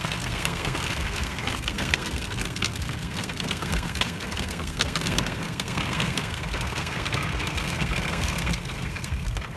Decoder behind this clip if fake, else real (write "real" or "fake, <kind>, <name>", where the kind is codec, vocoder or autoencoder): fake, codec, SNAC